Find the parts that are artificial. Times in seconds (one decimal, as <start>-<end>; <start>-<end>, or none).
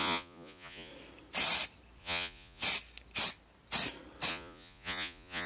0.0-0.9; 2.0-2.6; 4.3-5.5